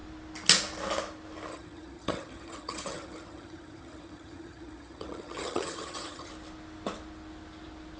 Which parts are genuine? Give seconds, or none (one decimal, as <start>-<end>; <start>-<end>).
0.0-1.5; 6.3-8.0